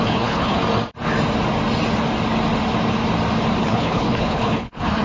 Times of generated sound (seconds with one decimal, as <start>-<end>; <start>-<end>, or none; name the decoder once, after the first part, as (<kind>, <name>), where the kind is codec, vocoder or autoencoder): 0.0-0.6 (codec, HILCodec); 3.6-5.0